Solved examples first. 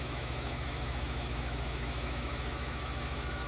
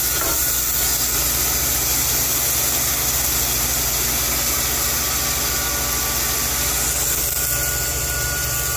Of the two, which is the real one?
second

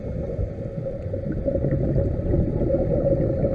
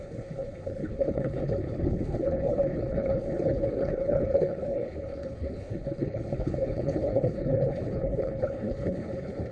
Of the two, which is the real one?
first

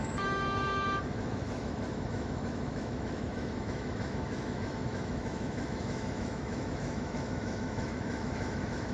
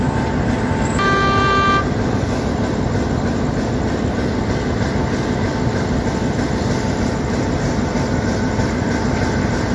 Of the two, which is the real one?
second